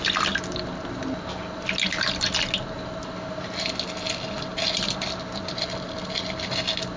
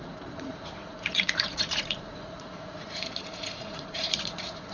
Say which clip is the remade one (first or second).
second